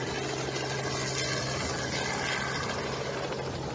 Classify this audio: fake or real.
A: real